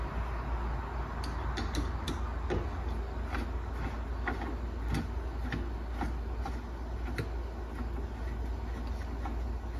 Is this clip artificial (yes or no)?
no